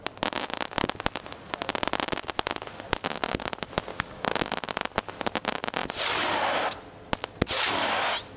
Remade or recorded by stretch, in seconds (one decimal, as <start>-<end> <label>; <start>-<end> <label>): 0.0-3.9 recorded; 3.9-4.4 remade; 4.4-8.4 recorded